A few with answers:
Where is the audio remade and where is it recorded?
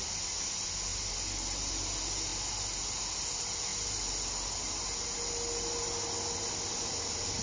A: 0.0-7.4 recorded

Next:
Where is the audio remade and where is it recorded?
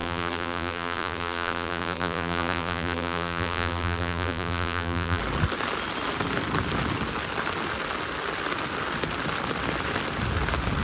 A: 0.0-5.2 remade; 5.2-10.8 recorded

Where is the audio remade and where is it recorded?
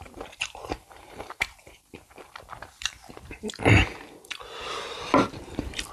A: 0.0-3.8 remade; 3.8-4.6 recorded; 4.6-5.9 remade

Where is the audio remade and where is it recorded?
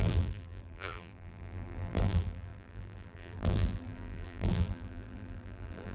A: 0.0-5.9 remade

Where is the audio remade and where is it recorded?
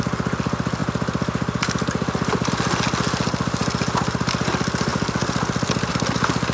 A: 0.0-4.9 recorded; 4.9-5.9 remade; 5.9-6.5 recorded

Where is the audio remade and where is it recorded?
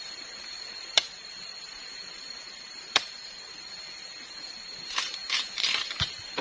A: 0.0-6.4 remade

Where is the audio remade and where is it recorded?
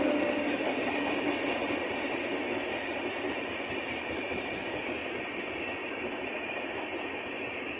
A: 0.0-1.6 recorded; 1.6-5.0 remade; 5.0-5.8 recorded; 5.8-6.8 remade; 6.8-7.8 recorded